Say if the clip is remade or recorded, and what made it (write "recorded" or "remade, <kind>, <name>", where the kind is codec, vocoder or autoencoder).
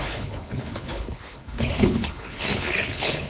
remade, codec, HILCodec